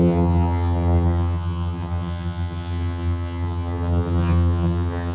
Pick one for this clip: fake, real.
fake